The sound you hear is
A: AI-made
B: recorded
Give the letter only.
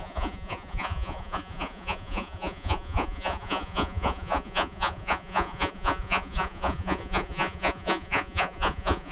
A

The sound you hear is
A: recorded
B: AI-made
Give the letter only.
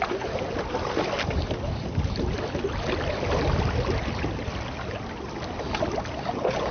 A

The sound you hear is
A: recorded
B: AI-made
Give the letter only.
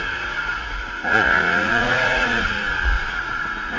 B